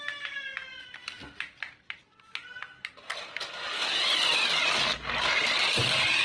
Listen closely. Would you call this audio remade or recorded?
recorded